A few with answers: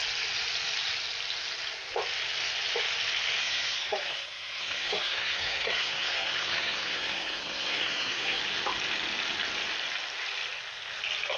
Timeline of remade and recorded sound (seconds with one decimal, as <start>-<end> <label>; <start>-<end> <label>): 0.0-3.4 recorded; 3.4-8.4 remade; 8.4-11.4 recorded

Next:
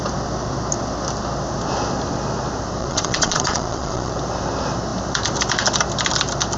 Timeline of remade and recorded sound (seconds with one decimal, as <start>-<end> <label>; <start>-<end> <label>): 0.0-2.8 recorded; 2.8-4.1 remade; 4.1-6.6 recorded

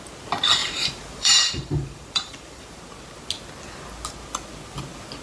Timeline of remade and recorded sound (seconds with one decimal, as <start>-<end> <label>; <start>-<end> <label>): 0.0-0.6 recorded; 0.6-2.8 remade; 2.8-5.2 recorded

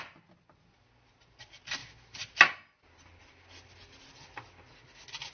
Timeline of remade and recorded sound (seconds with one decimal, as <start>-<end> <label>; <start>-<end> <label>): 0.0-5.3 recorded

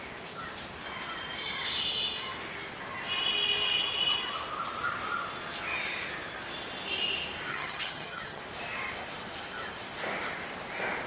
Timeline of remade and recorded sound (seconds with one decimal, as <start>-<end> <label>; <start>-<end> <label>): 0.0-7.5 recorded; 7.5-8.4 remade; 8.4-11.1 recorded